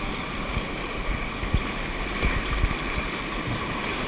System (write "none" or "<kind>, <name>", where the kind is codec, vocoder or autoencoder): none